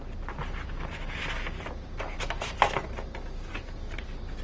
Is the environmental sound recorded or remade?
recorded